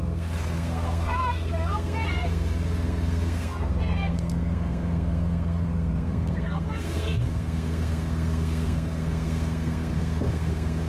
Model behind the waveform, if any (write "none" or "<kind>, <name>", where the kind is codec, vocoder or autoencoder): codec, SNAC